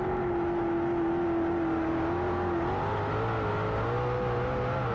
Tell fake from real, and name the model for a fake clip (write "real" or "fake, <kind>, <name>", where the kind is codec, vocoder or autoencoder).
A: real